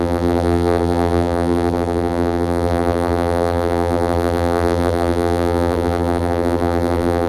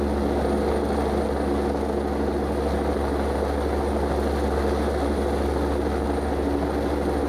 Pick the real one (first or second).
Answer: second